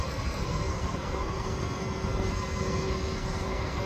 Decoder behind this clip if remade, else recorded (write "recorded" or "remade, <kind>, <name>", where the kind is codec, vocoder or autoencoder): remade, codec, SNAC